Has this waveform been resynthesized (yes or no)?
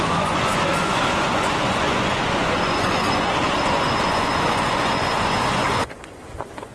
yes